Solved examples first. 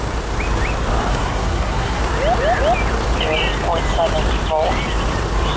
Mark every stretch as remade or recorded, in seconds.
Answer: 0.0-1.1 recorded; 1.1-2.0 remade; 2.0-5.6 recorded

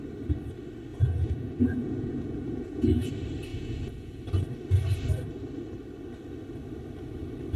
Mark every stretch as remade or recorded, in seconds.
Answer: 0.0-0.9 recorded; 0.9-3.1 remade; 3.1-3.5 recorded; 3.5-4.2 remade; 4.2-7.6 recorded